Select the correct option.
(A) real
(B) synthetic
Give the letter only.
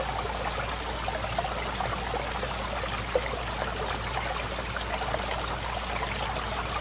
A